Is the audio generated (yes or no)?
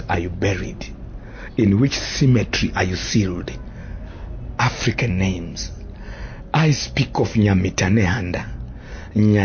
no